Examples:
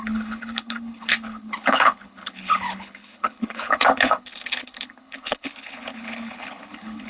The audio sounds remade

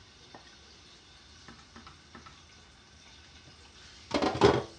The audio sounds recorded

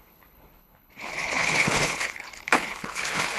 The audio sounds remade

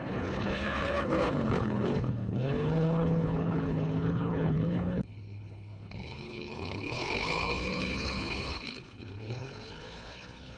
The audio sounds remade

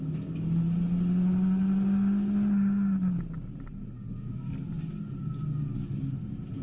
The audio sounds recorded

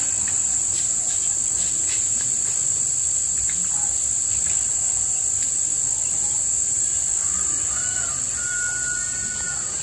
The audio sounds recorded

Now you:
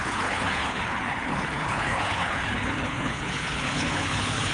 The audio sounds remade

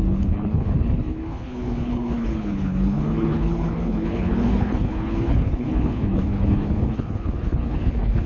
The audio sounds remade